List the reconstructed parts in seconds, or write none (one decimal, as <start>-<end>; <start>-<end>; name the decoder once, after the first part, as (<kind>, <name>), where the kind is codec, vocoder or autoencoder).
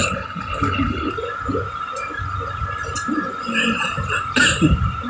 0.0-1.1 (codec, HILCodec)